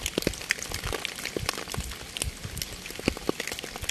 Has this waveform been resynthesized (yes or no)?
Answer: no